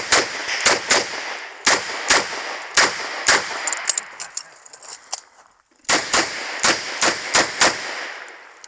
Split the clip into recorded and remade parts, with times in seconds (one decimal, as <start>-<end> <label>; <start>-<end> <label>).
0.0-4.9 recorded; 4.9-7.3 remade; 7.3-8.7 recorded